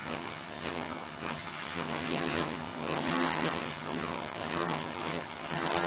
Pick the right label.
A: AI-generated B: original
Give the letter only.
A